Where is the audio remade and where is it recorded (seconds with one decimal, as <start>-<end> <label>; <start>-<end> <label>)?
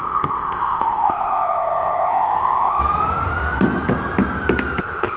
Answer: 0.0-2.8 remade; 2.8-4.8 recorded; 4.8-5.2 remade